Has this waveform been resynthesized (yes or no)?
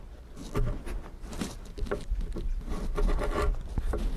no